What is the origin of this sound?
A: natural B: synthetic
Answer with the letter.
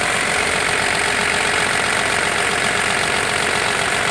B